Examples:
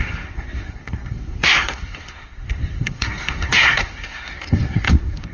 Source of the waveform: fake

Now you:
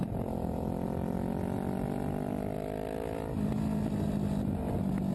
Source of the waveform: real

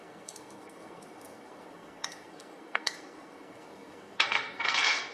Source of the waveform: fake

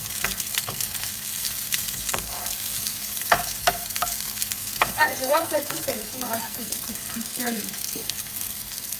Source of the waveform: fake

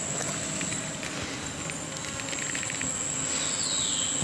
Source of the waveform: real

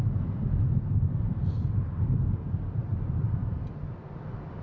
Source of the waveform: real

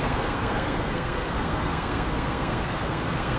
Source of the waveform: fake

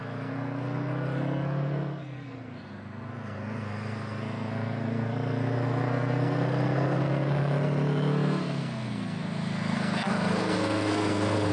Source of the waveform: fake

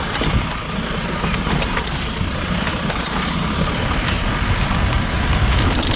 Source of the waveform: real